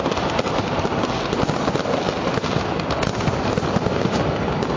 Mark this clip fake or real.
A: real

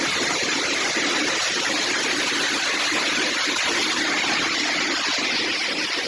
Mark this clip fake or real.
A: real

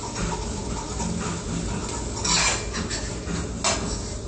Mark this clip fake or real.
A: real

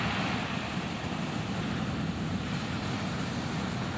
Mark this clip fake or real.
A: real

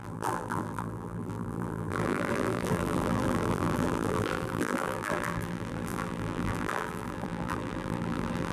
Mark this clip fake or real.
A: fake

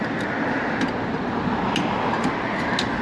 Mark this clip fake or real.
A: real